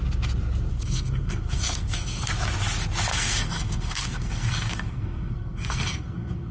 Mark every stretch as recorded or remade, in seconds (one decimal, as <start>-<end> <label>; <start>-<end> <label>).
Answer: 0.0-0.7 recorded; 0.7-2.3 remade; 2.3-3.1 recorded; 3.1-6.5 remade